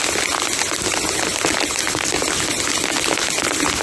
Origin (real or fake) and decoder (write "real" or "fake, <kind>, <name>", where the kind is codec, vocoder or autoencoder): real